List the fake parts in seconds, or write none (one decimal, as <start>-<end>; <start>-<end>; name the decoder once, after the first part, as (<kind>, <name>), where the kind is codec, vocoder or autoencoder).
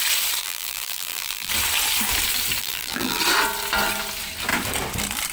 0.4-1.5 (vocoder, BigVGAN v2); 2.6-3.2